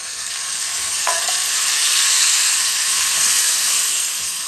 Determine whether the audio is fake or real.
fake